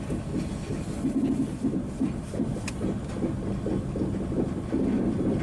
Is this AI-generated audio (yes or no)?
no